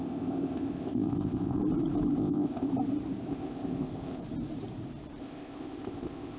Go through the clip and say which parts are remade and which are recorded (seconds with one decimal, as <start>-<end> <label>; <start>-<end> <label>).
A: 0.0-1.6 remade; 1.6-2.2 recorded; 2.2-2.7 remade; 2.7-3.3 recorded; 3.3-4.2 remade; 4.2-5.2 recorded; 5.2-6.4 remade